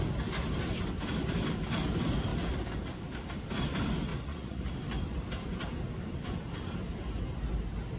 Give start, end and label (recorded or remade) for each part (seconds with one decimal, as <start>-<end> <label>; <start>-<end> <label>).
0.0-4.1 recorded; 4.1-4.7 remade; 4.7-8.0 recorded